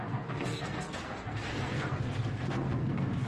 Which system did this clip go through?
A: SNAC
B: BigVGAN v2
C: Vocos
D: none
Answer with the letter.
A